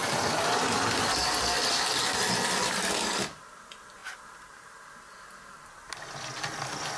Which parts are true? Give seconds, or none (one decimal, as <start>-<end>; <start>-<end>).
1.9-4.0; 4.6-7.0

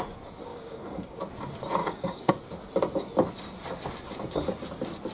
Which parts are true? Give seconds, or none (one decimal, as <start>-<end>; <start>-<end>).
0.0-0.5; 1.2-1.8; 2.3-5.1

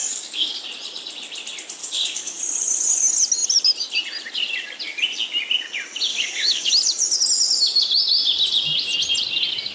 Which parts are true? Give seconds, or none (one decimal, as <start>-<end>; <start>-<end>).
0.6-1.8; 2.4-6.1; 6.7-9.7

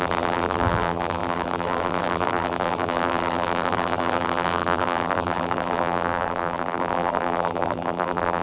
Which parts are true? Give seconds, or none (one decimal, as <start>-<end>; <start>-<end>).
none

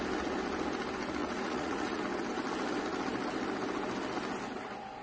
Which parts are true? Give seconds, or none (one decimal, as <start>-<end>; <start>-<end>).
0.0-1.2; 2.0-5.0

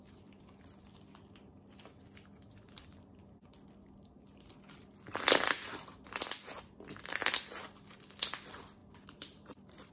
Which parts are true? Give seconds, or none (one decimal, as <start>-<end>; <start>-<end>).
0.0-8.8